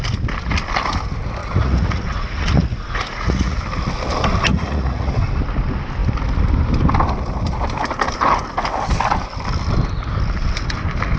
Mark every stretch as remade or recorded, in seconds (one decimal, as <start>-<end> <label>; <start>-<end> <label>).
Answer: 0.0-1.4 recorded; 1.4-3.6 remade; 3.6-4.5 recorded; 4.5-5.1 remade; 5.1-11.2 recorded